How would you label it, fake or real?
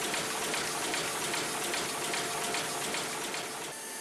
real